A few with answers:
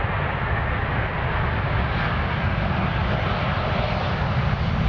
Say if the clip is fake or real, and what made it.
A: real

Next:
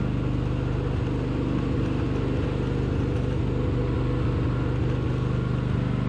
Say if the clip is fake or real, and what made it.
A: real